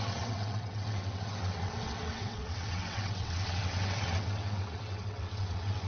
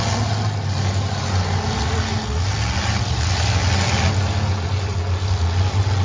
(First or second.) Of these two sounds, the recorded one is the second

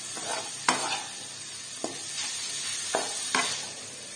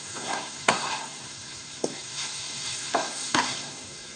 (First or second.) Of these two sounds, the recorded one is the first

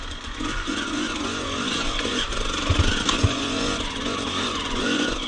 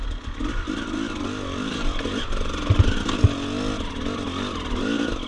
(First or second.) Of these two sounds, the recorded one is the second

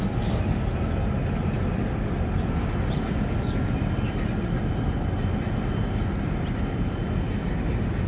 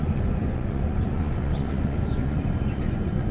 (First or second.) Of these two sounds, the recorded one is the first